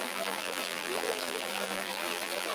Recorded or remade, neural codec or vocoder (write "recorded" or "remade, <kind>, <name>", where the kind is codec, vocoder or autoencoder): remade, vocoder, BigVGAN v2